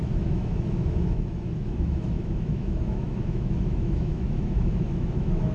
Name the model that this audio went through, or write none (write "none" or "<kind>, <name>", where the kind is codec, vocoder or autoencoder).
autoencoder, DAC-VAE